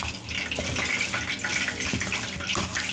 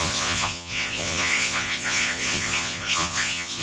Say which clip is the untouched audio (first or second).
first